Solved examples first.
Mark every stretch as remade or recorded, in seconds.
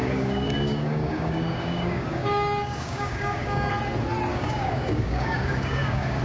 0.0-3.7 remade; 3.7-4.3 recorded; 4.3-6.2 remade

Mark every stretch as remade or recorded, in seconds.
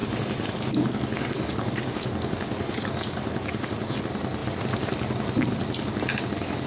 0.0-4.0 remade; 4.0-6.7 recorded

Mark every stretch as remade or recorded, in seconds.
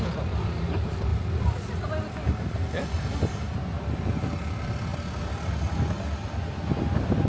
0.0-7.3 recorded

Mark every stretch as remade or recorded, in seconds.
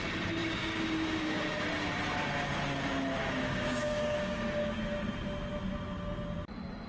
0.0-0.4 recorded; 0.4-1.6 remade; 1.6-3.2 recorded; 3.2-4.7 remade; 4.7-6.9 recorded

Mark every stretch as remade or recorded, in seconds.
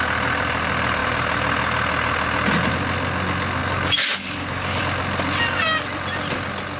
0.0-3.6 recorded; 3.6-4.8 remade; 4.8-6.8 recorded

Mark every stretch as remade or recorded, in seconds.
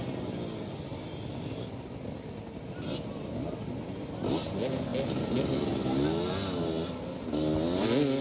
0.0-8.2 recorded